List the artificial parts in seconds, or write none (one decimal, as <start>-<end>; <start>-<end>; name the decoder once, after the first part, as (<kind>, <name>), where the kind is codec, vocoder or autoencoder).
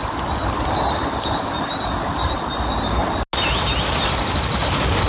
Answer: none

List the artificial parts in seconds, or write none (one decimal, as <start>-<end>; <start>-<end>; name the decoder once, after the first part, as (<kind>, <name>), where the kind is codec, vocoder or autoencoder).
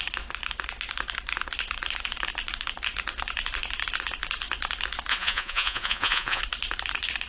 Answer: 5.1-6.4 (vocoder, Vocos)